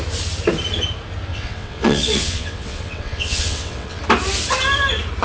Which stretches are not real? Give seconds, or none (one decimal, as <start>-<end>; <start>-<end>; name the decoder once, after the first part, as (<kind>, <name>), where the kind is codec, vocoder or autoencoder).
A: 1.3-4.0 (vocoder, WaveNeXt)